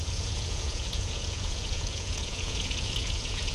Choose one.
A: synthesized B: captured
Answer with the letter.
A